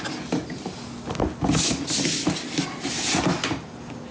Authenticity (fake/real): real